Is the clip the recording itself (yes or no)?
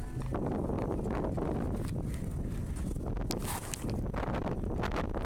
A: yes